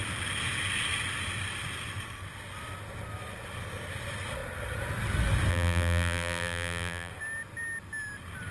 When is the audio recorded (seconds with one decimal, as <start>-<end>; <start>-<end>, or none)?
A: 0.0-5.5; 7.1-8.5